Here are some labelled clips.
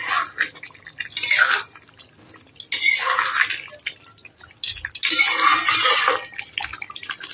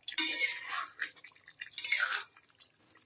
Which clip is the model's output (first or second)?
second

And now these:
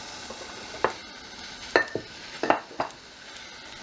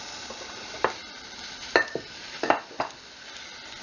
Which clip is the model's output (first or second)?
second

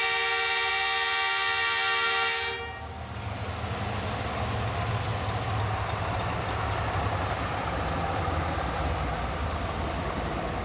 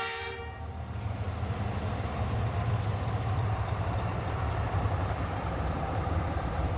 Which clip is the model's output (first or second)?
second